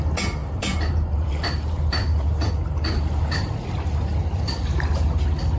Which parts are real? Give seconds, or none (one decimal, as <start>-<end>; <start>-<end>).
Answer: 0.0-0.4; 2.5-5.6